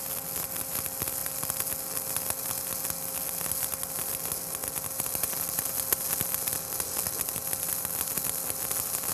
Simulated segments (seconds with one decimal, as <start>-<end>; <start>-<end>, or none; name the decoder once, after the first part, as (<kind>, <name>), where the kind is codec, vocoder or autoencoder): none